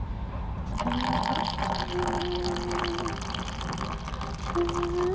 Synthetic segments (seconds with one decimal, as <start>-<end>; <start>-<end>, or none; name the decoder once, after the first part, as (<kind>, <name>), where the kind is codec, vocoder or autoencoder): none